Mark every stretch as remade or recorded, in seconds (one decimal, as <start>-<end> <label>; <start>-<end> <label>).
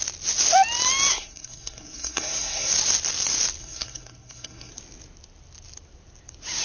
0.0-1.1 recorded; 1.1-2.7 remade; 2.7-3.6 recorded; 3.6-4.7 remade; 4.7-6.6 recorded